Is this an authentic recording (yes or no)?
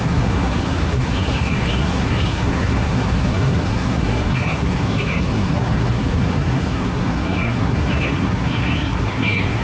no